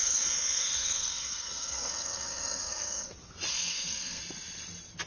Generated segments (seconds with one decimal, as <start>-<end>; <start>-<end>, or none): 0.0-3.1; 3.5-4.2